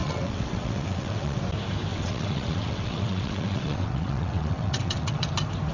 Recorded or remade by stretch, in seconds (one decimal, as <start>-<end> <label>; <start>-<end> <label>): 0.0-1.4 remade; 1.4-1.9 recorded; 1.9-5.3 remade; 5.3-5.7 recorded